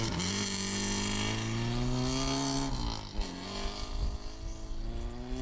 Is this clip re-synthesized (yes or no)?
no